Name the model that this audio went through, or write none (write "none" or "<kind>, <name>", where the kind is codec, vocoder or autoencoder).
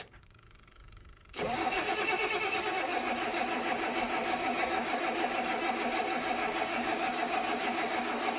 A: codec, DAC